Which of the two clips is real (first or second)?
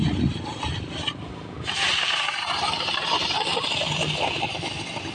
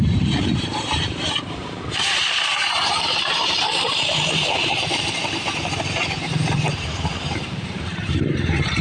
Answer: first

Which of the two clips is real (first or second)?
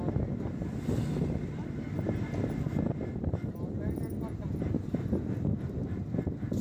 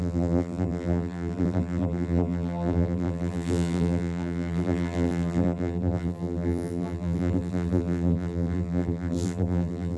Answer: first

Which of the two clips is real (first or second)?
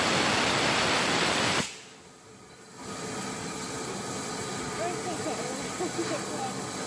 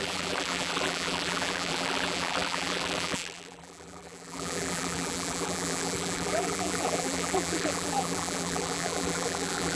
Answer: first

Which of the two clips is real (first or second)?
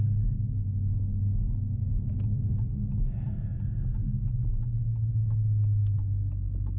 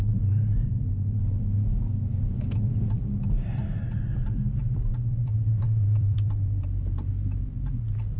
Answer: first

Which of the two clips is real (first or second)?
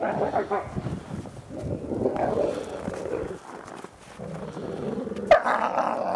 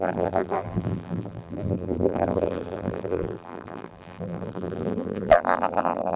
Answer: first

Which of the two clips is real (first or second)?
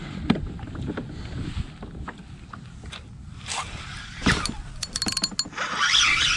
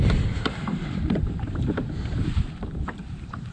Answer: first